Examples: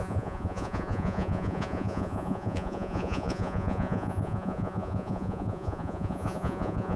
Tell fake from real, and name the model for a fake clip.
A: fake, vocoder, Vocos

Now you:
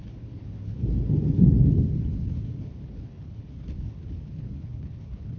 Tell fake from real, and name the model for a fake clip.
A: fake, codec, HILCodec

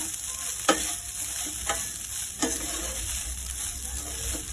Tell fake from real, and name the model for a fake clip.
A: real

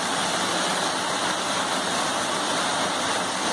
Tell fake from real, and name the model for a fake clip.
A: real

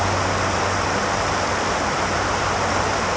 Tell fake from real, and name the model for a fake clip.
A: real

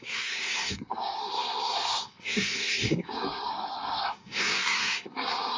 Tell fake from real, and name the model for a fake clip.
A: fake, codec, SNAC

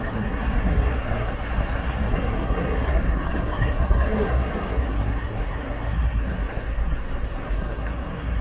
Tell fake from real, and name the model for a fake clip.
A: fake, codec, SNAC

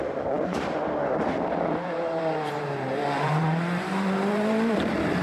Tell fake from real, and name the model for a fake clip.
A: fake, vocoder, BigVGAN v2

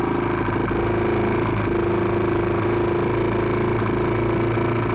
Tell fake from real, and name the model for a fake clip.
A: real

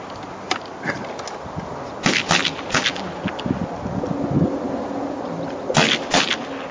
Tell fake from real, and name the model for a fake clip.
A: real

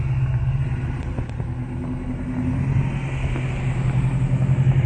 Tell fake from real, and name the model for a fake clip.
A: real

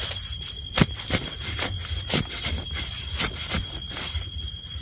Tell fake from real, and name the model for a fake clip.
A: real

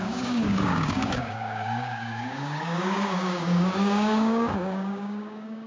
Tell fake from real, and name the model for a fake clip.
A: fake, codec, DAC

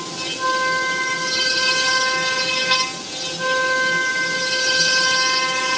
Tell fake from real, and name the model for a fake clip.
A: real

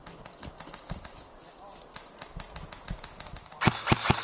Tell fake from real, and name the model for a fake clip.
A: real